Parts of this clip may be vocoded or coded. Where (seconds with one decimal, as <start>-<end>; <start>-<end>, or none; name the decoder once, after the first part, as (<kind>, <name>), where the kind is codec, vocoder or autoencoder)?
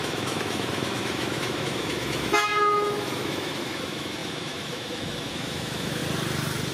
0.0-6.0 (autoencoder, DAC-VAE)